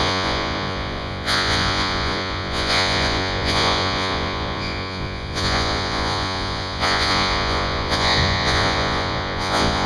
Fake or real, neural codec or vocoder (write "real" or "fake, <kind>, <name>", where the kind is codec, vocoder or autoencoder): fake, vocoder, Vocos